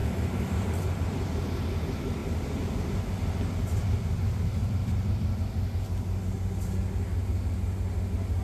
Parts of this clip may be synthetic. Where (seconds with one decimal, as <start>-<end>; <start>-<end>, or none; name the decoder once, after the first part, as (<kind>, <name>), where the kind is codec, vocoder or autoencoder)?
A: 0.0-0.8 (vocoder, BigVGAN v2); 2.2-3.0; 4.6-5.1